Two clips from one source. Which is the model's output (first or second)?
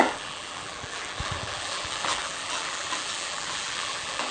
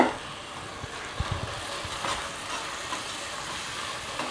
first